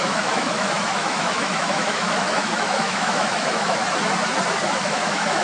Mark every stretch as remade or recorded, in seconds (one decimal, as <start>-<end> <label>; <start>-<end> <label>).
0.0-3.8 remade; 3.8-4.5 recorded; 4.5-5.4 remade